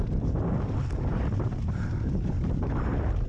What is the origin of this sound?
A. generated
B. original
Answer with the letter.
B